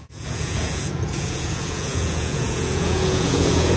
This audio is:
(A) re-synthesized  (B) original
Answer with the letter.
A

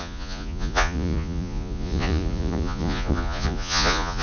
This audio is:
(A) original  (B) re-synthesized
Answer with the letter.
B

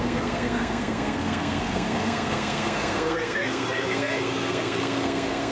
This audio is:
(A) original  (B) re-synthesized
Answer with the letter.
B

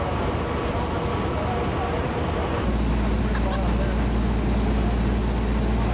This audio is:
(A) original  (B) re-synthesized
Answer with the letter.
A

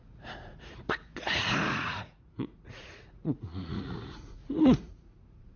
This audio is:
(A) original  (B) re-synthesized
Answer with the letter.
B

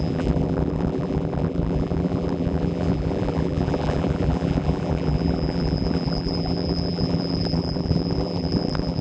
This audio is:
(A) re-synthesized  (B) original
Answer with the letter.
A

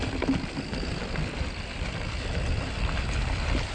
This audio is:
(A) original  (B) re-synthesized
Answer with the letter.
A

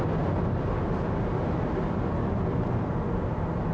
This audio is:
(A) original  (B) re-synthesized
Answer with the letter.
A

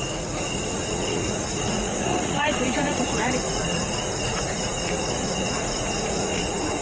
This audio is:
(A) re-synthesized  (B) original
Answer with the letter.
A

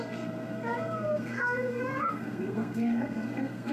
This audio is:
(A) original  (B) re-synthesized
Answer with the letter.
B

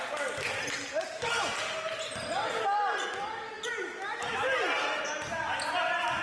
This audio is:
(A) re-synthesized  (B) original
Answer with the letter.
B